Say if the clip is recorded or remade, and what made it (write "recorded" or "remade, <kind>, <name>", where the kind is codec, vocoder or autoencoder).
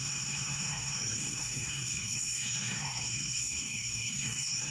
remade, codec, SNAC